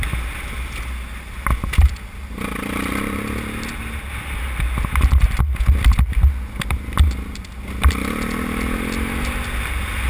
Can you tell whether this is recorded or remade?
recorded